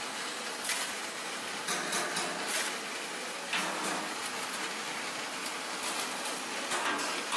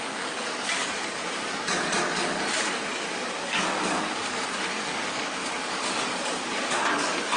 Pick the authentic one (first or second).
first